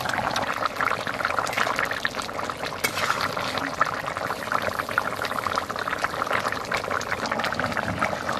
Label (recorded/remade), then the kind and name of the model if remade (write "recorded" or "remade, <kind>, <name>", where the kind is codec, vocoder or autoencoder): recorded